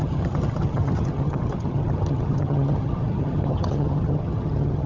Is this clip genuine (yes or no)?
no